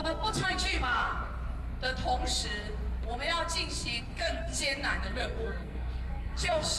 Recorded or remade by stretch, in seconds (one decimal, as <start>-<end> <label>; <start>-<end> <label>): 0.0-1.1 remade; 1.1-4.0 recorded; 4.0-4.5 remade; 4.5-5.0 recorded; 5.0-6.8 remade